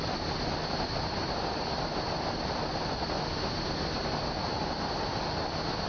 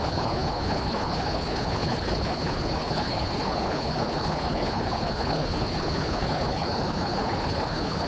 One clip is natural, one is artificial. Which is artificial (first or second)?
second